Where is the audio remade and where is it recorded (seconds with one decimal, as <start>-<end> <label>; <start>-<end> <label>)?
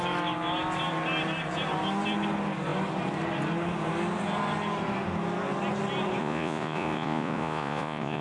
0.0-6.2 recorded; 6.2-8.2 remade